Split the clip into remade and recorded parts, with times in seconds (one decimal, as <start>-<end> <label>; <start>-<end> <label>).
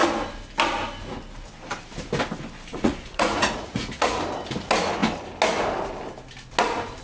0.0-2.7 recorded; 2.7-4.2 remade; 4.2-7.0 recorded